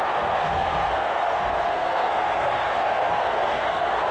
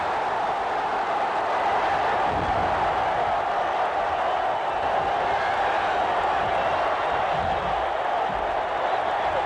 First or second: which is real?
second